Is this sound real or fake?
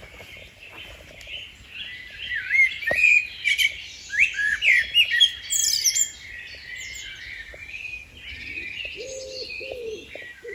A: real